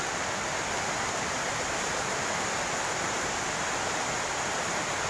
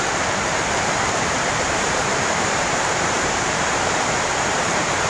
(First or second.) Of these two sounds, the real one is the first